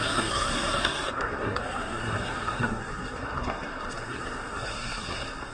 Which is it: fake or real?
fake